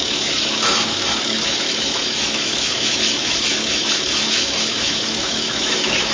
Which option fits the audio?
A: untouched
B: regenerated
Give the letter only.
B